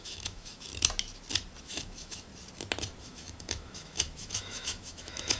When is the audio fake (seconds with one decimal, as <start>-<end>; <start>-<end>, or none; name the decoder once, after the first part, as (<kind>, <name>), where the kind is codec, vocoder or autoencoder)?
0.0-0.7 (autoencoder, DAC-VAE); 1.6-2.3; 3.0-5.4